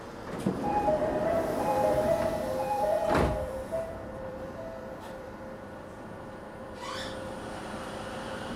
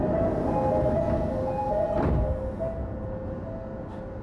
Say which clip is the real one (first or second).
second